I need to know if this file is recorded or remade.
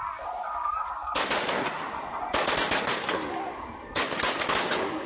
recorded